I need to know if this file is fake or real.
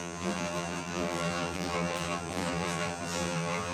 fake